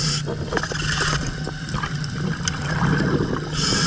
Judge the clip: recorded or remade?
recorded